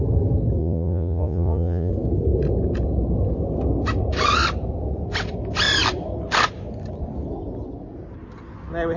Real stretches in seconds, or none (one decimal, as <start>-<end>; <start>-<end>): 0.0-0.6; 1.9-9.0